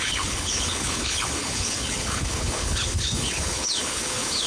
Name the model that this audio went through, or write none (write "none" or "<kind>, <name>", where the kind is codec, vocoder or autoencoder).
codec, HILCodec